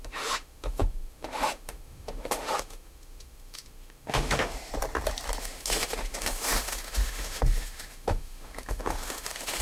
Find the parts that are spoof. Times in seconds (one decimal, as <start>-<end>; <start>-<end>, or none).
0.0-4.7; 5.4-9.6